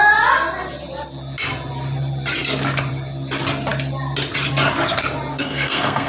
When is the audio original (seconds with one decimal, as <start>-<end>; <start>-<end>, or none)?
0.0-5.3